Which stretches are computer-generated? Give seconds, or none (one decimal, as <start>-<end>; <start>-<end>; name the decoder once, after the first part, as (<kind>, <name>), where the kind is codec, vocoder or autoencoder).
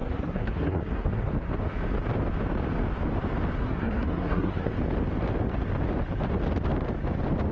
0.0-1.3 (codec, SNAC); 3.6-4.7